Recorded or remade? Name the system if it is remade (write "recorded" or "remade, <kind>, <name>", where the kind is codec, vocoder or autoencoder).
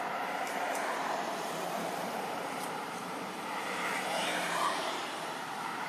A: remade, vocoder, BigVGAN v2